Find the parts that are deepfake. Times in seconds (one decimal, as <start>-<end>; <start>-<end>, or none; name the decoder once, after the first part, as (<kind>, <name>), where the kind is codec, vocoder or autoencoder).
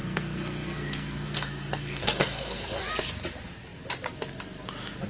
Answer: 0.0-2.8 (codec, SNAC)